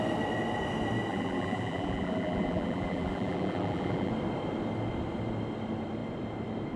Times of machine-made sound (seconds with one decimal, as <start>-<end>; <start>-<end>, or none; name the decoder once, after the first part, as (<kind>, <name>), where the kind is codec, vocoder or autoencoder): 1.1-4.1 (vocoder, BigVGAN v2)